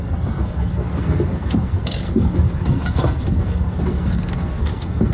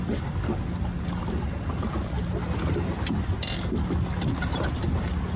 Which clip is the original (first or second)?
second